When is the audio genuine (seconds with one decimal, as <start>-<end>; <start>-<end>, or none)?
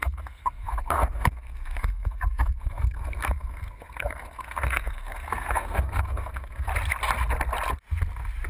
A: 6.7-8.5